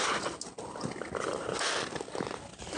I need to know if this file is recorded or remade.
recorded